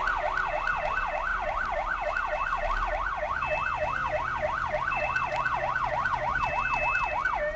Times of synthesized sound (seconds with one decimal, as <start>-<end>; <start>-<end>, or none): 1.3-2.1